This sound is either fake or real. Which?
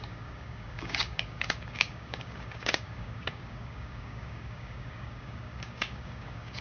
fake